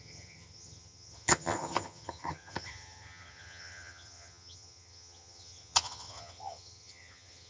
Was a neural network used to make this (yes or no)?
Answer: yes